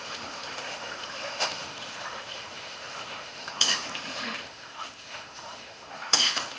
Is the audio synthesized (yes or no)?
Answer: yes